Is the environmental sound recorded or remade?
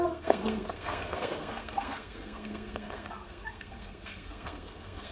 remade